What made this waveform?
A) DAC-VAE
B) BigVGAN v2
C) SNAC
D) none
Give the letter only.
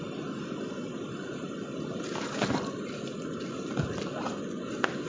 D